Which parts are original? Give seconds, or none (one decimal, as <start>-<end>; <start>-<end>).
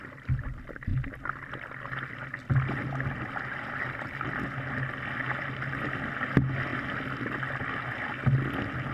0.0-8.9